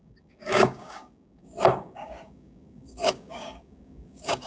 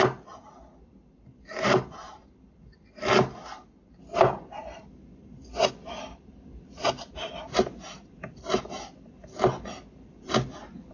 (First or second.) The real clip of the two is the second